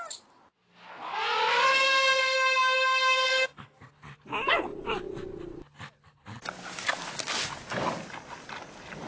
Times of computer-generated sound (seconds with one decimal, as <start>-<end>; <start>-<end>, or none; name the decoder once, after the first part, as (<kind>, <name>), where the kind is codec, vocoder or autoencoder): 1.7-3.9 (codec, SNAC)